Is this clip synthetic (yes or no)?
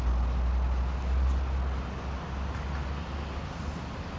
no